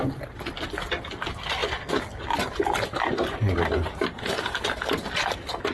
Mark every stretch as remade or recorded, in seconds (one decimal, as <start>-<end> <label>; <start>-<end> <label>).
0.0-5.7 recorded